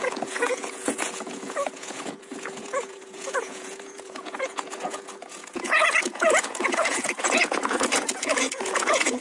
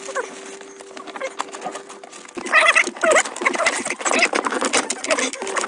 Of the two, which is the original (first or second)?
second